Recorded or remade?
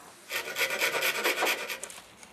recorded